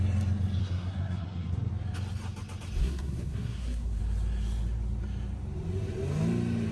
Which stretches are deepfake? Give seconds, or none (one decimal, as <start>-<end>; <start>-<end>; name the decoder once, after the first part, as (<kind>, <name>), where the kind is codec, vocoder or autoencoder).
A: 0.6-1.7 (codec, SNAC); 2.8-4.0